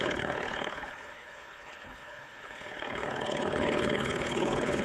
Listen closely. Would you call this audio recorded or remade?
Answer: remade